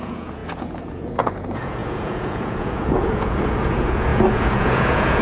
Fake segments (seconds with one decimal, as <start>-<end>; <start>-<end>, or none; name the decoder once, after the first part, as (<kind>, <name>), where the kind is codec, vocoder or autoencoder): 0.0-5.2 (vocoder, Vocos)